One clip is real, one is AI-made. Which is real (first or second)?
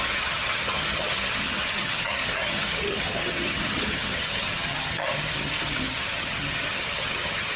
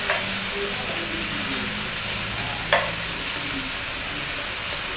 second